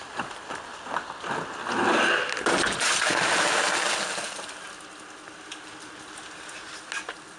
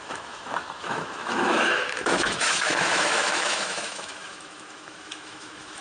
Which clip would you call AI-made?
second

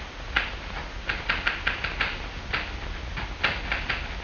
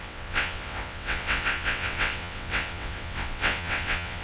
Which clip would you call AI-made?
second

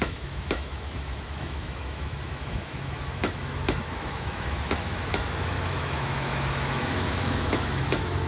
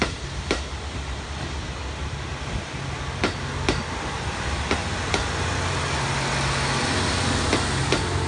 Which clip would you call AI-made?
first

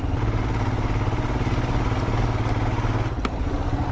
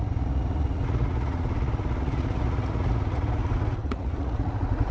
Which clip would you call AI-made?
second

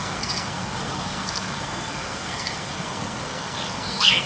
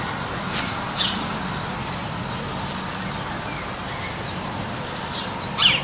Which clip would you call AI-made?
first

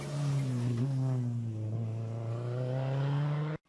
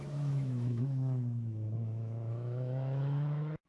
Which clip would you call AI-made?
second